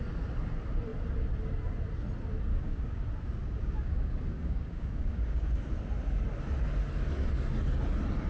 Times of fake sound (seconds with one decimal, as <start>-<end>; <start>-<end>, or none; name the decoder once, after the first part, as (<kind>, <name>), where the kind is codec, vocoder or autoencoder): 2.5-3.0 (codec, DAC); 3.4-5.5